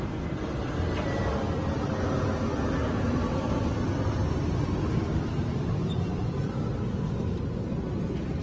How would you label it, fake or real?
real